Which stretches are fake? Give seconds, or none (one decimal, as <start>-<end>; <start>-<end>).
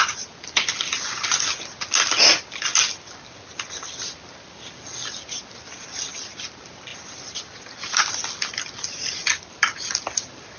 none